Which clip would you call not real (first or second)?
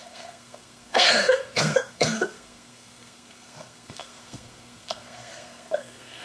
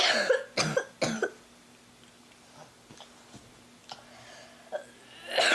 first